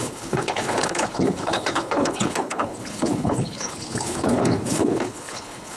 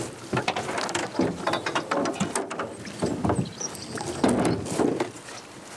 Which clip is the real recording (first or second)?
second